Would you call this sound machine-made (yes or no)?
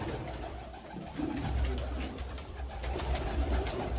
yes